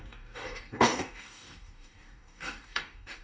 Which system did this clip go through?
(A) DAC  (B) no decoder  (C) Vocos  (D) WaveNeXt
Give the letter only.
A